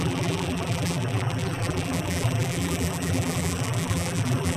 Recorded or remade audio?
remade